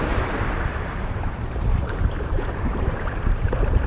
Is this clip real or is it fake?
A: fake